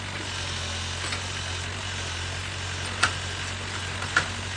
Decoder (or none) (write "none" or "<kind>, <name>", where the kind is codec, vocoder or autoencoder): none